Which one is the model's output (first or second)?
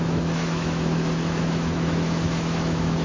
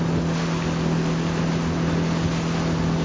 first